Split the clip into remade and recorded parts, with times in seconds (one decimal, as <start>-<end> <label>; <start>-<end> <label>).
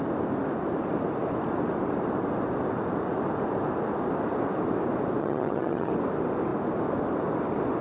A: 0.0-5.2 recorded; 5.2-5.9 remade; 5.9-7.8 recorded